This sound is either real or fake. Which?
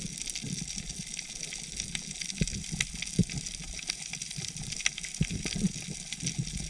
real